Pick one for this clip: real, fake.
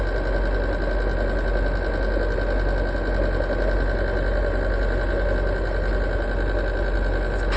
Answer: real